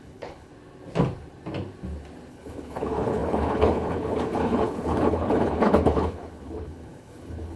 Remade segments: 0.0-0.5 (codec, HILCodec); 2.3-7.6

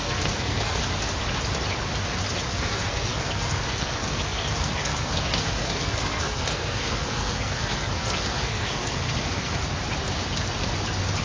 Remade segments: 0.0-0.8 (codec, SNAC); 2.5-9.6

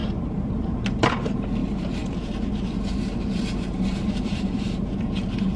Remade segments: 0.0-5.6 (vocoder, BigVGAN v2)

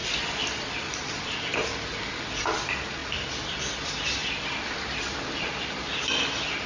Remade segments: 0.0-1.5 (vocoder, BigVGAN v2); 2.4-6.7

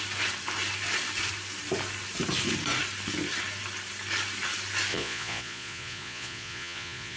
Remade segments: 4.9-7.2 (vocoder, Vocos)

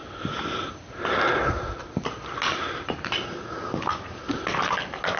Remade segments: none

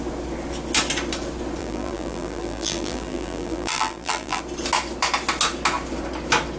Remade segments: 1.6-4.4 (vocoder, BigVGAN v2)

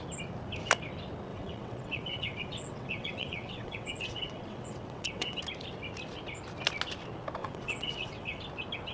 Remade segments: 1.3-5.4 (vocoder, WaveNeXt); 7.4-8.4